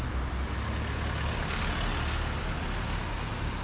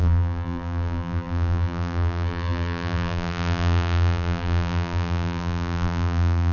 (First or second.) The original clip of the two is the first